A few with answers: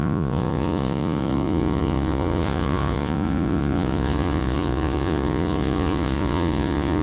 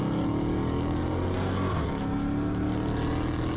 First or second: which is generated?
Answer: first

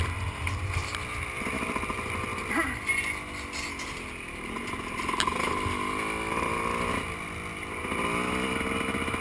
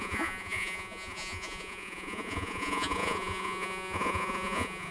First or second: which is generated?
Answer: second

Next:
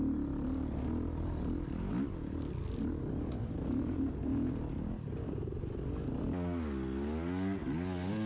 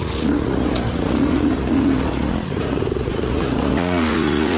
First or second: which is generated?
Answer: second